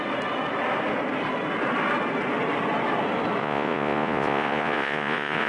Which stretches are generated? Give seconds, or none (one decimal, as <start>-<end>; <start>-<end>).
3.4-5.5